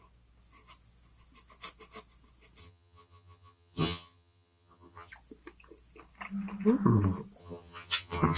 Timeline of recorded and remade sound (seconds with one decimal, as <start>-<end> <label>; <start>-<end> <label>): 0.0-2.6 recorded; 2.6-5.1 remade; 5.1-7.4 recorded; 7.4-8.4 remade